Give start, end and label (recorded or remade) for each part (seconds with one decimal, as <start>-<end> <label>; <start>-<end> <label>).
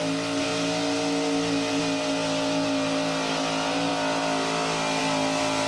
0.0-5.7 recorded